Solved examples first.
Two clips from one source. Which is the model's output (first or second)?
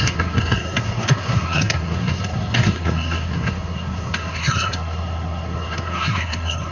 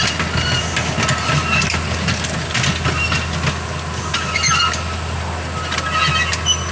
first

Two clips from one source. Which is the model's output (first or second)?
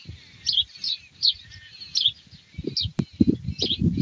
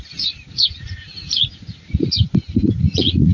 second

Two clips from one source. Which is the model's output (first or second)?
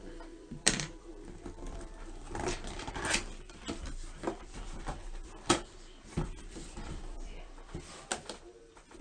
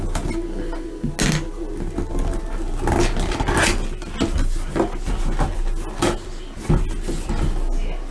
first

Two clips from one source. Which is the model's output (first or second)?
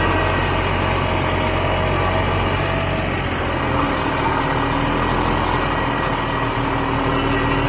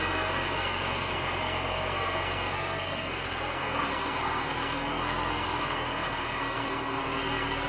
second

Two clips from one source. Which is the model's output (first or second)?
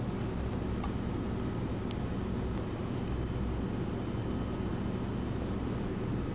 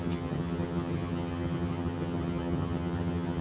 second